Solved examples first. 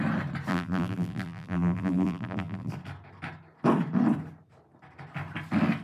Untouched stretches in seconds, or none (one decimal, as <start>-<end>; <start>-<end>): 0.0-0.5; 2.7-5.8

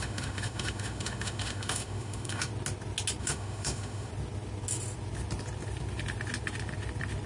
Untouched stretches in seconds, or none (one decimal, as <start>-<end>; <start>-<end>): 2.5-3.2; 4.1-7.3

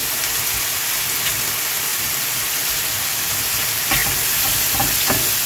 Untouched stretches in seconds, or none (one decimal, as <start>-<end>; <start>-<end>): 0.0-1.9; 3.4-5.5

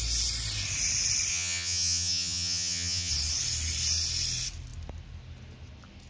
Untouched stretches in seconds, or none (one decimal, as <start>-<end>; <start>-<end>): 0.0-1.3; 3.1-6.1

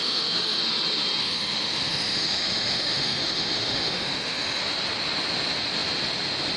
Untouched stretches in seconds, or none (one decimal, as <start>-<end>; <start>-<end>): 0.6-1.2; 4.6-6.6

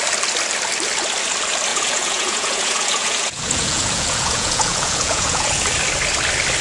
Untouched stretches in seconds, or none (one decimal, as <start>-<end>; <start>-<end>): 0.0-1.7; 5.7-6.6